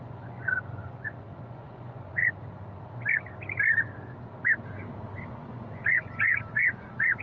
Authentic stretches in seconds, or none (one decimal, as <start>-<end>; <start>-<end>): 2.2-5.3